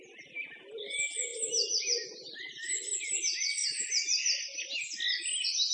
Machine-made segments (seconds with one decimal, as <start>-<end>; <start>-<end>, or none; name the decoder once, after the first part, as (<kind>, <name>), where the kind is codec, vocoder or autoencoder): none